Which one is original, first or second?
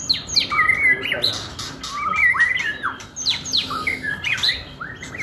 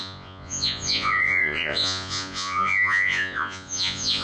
first